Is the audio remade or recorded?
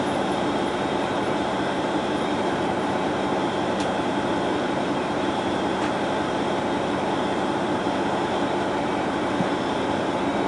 remade